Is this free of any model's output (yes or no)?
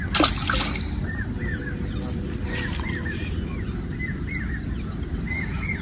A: yes